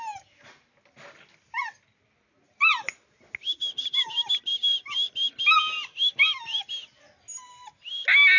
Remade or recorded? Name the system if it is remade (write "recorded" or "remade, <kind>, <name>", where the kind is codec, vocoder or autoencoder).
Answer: recorded